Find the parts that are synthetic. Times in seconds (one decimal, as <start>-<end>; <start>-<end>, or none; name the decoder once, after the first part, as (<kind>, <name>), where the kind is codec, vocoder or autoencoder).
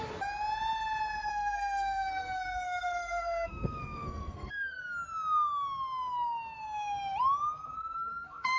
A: 1.3-4.8 (codec, SNAC); 7.8-8.6